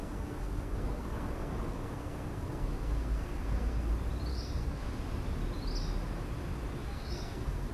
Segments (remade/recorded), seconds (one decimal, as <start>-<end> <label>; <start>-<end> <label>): 0.0-3.9 remade; 3.9-4.3 recorded; 4.3-4.9 remade; 4.9-6.8 recorded; 6.8-7.7 remade